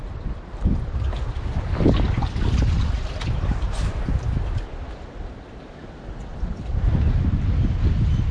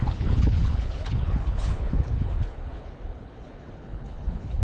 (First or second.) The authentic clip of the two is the first